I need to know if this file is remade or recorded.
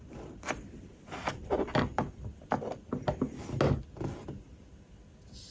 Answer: recorded